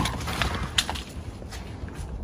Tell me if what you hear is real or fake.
real